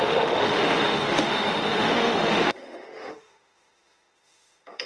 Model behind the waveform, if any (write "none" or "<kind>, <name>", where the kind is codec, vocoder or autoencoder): autoencoder, DAC-VAE